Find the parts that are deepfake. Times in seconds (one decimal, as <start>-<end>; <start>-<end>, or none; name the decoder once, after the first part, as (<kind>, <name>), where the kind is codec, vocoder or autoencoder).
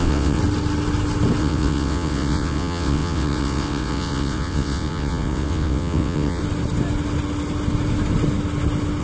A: 0.0-0.4 (vocoder, WaveNeXt); 1.4-6.4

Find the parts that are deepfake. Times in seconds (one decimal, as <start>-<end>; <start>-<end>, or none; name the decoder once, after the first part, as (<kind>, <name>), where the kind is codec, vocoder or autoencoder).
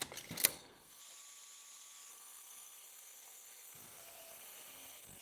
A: 0.4-1.0 (codec, SNAC); 2.1-5.2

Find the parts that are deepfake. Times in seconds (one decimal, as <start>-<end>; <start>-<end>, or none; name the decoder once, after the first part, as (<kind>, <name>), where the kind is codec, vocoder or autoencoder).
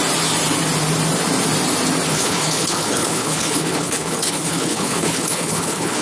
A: 2.1-6.0 (codec, HILCodec)